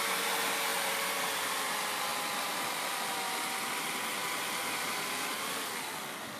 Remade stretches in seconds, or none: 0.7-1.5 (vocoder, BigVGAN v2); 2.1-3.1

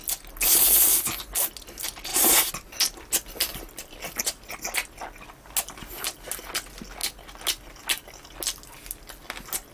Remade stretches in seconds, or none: 2.1-4.2 (vocoder, BigVGAN v2)